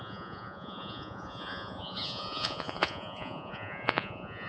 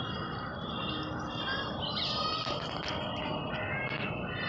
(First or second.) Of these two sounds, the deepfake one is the first